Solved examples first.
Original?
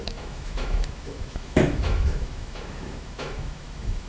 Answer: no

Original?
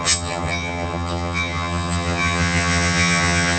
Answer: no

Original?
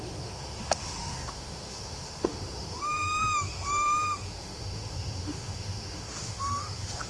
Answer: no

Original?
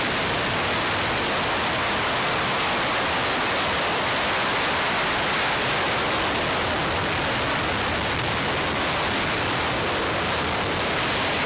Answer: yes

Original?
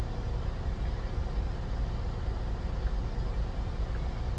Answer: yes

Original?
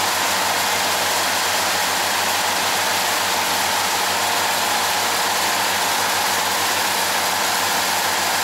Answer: yes